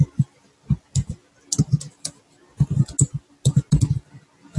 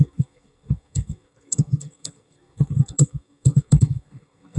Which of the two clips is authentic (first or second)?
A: first